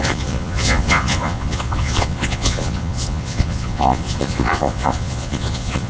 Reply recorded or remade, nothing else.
remade